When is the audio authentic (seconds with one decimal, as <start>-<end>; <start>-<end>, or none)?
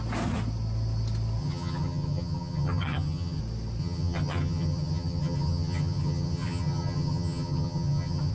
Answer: 0.0-1.4; 3.4-3.8